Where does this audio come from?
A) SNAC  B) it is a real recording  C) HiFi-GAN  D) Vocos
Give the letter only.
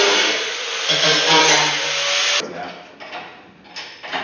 B